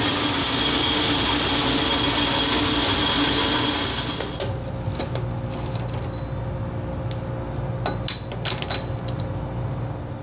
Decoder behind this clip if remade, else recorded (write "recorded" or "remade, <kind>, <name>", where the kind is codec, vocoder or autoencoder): recorded